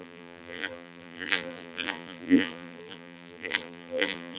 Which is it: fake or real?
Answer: fake